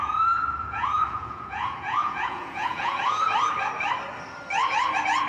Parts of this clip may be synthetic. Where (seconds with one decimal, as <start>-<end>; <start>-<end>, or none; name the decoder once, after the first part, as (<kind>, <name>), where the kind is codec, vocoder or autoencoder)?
0.0-3.2 (vocoder, Vocos)